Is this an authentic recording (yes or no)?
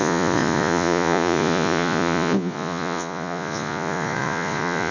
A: no